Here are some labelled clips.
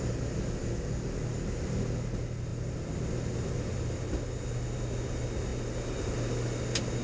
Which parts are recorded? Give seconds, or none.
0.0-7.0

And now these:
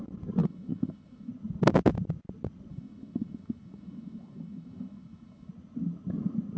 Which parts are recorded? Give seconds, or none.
0.0-0.4; 1.3-2.7; 5.5-6.6

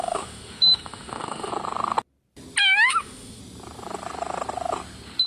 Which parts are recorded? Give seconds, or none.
1.5-2.6; 3.4-5.3

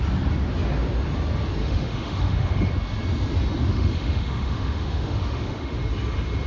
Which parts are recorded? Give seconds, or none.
0.0-1.6; 2.7-3.7; 5.8-6.5

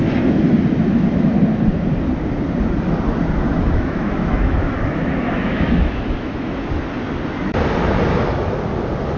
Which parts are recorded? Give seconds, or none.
0.0-3.4; 6.6-9.2

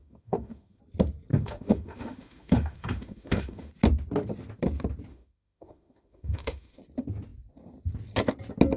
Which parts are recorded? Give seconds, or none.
0.8-1.3; 3.7-5.1; 6.8-8.8

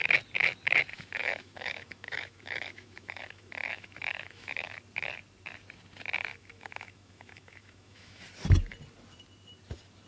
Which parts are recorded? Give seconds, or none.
0.0-0.9; 4.8-6.3; 8.2-10.1